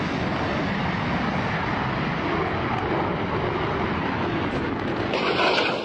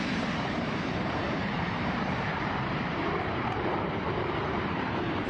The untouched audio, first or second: first